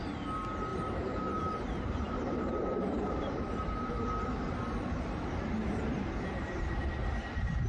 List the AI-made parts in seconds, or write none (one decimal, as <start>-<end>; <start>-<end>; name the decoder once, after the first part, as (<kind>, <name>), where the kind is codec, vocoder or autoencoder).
0.7-3.9 (vocoder, BigVGAN v2)